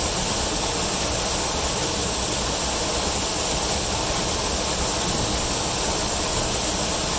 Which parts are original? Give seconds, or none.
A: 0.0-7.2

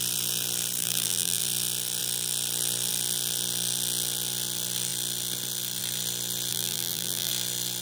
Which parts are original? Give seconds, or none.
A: 0.0-0.8; 1.4-6.5; 7.3-7.8

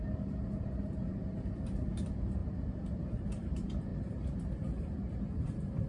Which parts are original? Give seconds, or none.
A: none

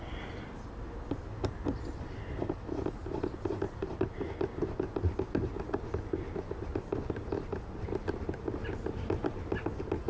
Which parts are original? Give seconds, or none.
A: 0.0-3.0; 3.7-6.7; 9.7-10.1

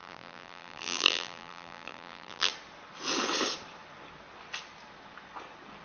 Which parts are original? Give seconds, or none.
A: 2.5-5.8

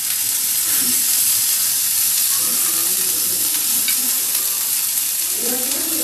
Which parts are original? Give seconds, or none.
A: 0.0-2.8; 5.5-6.0

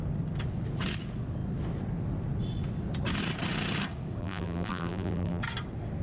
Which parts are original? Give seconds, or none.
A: 0.0-4.2; 5.4-6.0